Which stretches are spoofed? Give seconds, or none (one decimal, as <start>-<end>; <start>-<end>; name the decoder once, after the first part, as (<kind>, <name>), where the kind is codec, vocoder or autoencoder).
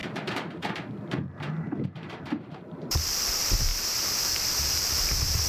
0.0-3.7 (vocoder, BigVGAN v2); 4.2-5.5